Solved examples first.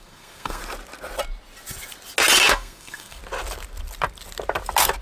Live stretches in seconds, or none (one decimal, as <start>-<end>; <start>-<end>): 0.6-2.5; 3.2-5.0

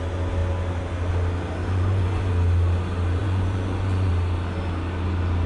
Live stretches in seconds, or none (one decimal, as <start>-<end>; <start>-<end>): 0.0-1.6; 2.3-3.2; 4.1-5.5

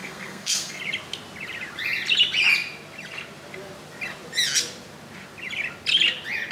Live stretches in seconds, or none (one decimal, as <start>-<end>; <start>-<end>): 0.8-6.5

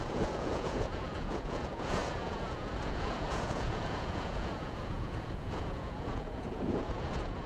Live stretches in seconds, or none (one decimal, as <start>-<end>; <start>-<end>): none

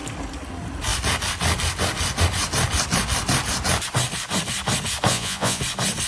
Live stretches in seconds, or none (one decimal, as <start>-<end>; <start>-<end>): 0.0-5.1; 5.6-6.1